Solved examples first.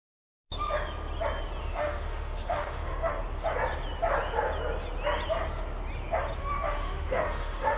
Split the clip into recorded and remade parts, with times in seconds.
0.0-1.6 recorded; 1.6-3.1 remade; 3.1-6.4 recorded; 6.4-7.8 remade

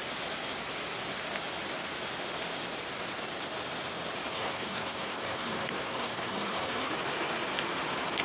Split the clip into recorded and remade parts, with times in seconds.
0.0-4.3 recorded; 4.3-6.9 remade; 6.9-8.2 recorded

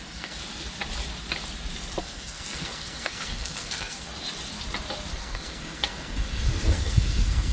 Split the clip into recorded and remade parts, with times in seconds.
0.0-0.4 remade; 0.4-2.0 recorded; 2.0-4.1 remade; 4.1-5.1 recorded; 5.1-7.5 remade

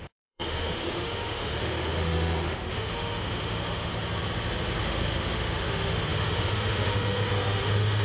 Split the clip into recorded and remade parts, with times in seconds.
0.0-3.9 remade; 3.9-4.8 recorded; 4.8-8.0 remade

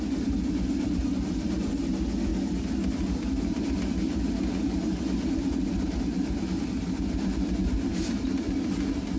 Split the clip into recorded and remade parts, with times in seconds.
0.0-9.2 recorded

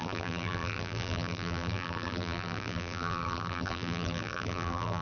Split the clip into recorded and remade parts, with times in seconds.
0.0-5.0 remade

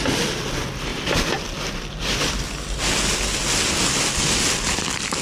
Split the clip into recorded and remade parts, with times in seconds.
0.0-5.2 recorded

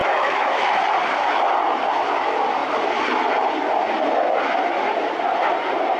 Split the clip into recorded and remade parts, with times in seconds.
0.0-0.8 remade; 0.8-6.0 recorded